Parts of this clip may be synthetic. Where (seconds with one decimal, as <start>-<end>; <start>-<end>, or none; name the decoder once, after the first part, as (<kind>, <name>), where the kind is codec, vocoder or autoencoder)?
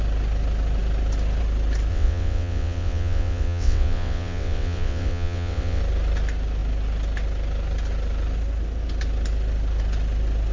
1.9-5.8 (vocoder, WaveNeXt)